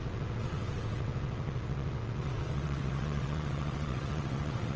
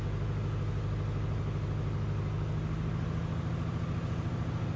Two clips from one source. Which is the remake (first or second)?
first